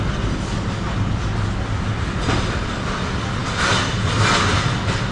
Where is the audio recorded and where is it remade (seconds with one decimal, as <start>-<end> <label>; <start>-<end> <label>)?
0.0-5.1 recorded